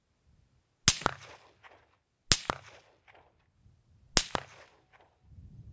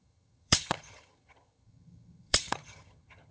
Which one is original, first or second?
first